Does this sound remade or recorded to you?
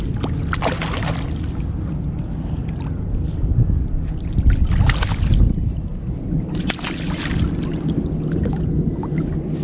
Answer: recorded